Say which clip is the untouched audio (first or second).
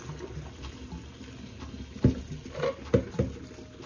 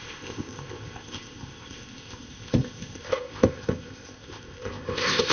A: first